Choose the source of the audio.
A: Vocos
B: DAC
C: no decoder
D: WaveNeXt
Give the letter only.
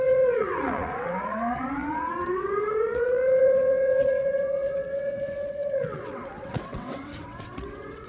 D